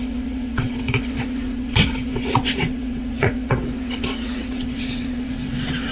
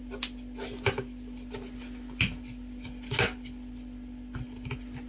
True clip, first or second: second